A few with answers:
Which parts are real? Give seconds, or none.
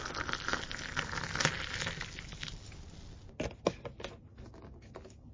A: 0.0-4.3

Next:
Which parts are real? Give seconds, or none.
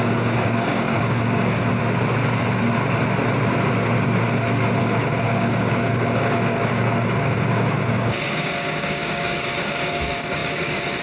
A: 1.7-4.8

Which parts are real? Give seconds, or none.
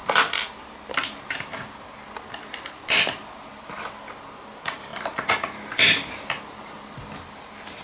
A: 0.0-7.8